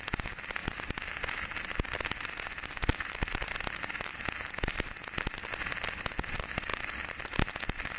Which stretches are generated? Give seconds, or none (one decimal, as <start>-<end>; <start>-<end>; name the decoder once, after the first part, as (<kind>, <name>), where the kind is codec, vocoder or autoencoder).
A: none